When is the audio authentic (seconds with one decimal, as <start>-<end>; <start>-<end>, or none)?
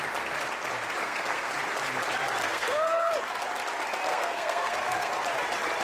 0.0-1.0; 1.5-2.4; 3.1-4.1; 5.1-5.8